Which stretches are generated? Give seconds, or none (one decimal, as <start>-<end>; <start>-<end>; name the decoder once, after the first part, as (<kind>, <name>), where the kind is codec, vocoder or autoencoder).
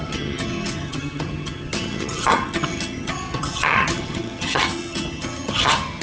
0.0-6.0 (vocoder, HiFi-GAN)